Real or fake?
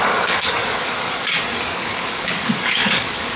fake